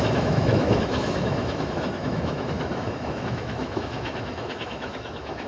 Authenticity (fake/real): fake